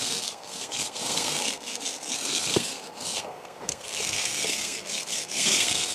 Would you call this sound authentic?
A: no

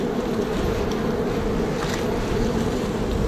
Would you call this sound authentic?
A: yes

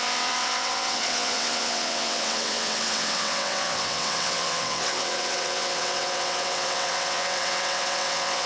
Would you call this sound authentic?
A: no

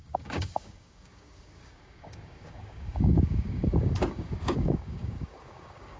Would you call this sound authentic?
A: no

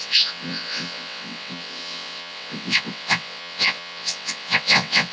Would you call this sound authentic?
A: no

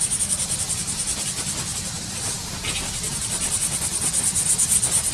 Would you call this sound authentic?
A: yes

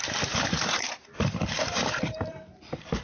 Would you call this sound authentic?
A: no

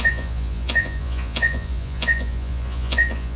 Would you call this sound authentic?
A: no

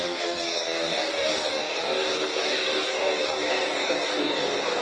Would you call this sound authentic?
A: no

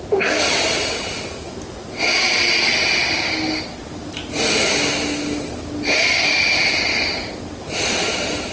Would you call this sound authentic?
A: yes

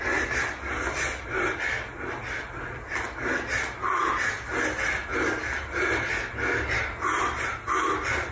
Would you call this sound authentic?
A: yes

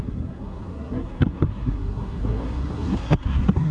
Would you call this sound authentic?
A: no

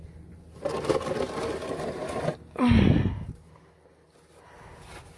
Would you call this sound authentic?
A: yes